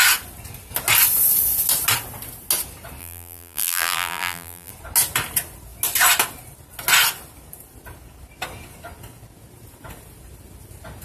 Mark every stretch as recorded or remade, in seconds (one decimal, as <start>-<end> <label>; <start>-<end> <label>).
0.0-3.0 recorded; 3.0-4.7 remade; 4.7-11.0 recorded

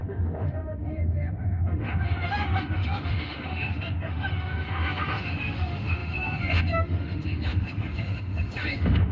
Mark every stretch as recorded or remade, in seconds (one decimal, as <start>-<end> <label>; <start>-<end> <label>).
0.0-9.1 remade

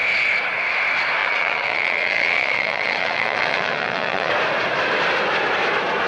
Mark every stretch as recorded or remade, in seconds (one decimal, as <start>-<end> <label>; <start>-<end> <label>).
0.0-1.2 recorded; 1.2-4.3 remade; 4.3-6.1 recorded

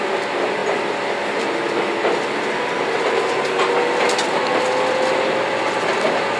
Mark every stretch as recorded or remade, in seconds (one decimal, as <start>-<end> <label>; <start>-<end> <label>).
0.0-6.4 recorded

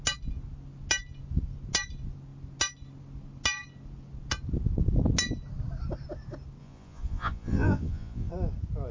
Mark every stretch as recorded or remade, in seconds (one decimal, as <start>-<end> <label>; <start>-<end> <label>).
0.0-6.6 recorded; 6.6-8.3 remade; 8.3-8.9 recorded

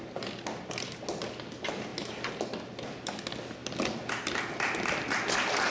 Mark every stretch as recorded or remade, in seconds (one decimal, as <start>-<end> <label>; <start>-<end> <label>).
0.0-5.7 recorded

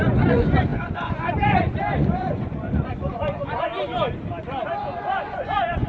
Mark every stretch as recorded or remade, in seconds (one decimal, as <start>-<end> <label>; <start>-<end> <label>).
0.0-3.7 remade; 3.7-4.4 recorded; 4.4-5.9 remade

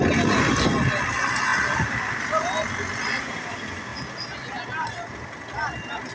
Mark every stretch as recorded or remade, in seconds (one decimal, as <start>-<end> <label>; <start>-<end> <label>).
0.0-6.1 recorded